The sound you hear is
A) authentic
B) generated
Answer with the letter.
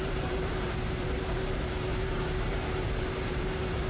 B